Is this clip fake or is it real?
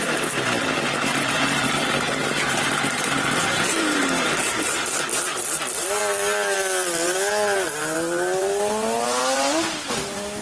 real